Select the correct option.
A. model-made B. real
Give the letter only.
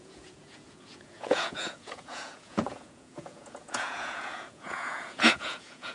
A